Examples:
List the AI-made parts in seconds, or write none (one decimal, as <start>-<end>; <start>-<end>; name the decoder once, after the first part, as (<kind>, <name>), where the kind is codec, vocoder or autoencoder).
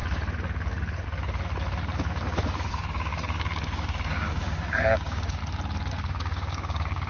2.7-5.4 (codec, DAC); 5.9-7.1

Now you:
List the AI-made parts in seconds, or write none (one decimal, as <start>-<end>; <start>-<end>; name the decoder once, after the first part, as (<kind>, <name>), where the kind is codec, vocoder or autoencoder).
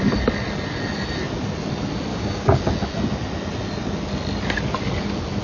2.1-2.6 (codec, DAC)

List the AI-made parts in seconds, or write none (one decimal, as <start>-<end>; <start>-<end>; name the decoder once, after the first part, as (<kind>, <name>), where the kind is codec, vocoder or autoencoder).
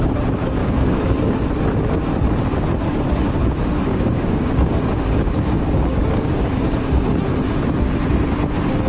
0.6-1.4 (codec, DAC); 3.4-6.5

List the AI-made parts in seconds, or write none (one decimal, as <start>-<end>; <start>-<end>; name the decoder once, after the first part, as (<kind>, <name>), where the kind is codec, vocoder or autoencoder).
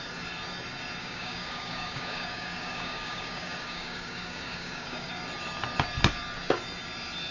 1.0-5.1 (codec, DAC)